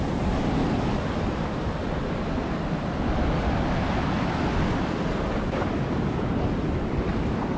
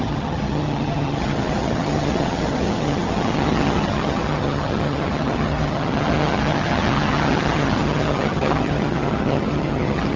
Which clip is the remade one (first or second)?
second